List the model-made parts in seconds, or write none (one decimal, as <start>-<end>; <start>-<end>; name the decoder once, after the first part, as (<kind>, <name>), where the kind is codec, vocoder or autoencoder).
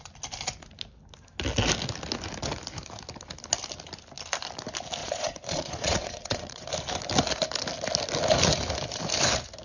5.0-6.7 (vocoder, Vocos)